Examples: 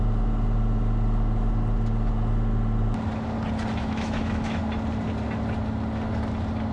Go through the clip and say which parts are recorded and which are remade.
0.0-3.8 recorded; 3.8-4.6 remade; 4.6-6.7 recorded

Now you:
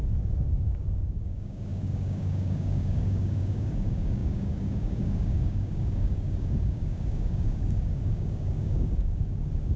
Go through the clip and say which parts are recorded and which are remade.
0.0-9.8 remade

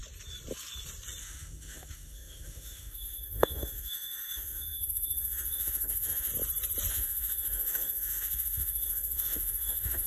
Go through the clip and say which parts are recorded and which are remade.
0.0-1.2 recorded; 1.2-6.3 remade; 6.3-6.9 recorded; 6.9-10.1 remade

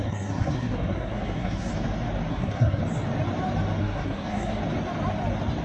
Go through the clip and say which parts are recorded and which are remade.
0.0-1.7 remade; 1.7-2.3 recorded; 2.3-2.8 remade; 2.8-3.8 recorded; 3.8-4.6 remade; 4.6-5.6 recorded

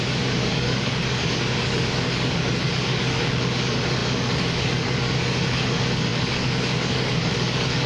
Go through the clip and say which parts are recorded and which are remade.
0.0-7.9 remade

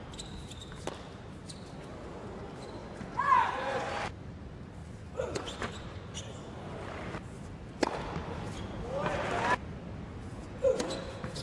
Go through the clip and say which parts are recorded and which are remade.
0.0-2.8 recorded; 2.8-4.0 remade; 4.0-4.8 recorded; 4.8-6.1 remade; 6.1-10.3 recorded; 10.3-11.4 remade

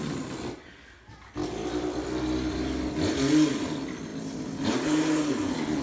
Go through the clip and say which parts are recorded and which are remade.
0.0-5.8 recorded